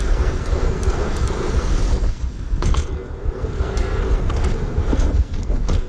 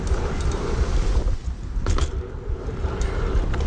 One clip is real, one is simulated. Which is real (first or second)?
second